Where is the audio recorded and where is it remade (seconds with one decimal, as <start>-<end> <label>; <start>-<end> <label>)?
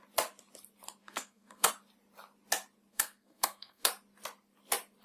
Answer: 0.0-1.0 recorded; 1.0-1.7 remade; 1.7-2.9 recorded; 2.9-3.9 remade; 3.9-5.0 recorded